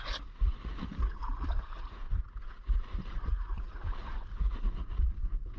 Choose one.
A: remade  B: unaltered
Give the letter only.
A